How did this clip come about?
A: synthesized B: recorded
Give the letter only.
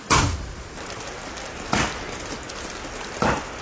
B